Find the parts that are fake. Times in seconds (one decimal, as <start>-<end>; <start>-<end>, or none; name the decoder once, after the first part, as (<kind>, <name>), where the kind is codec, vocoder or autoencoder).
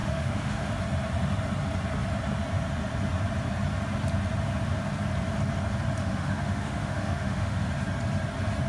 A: 0.0-0.7 (autoencoder, DAC-VAE); 6.0-7.7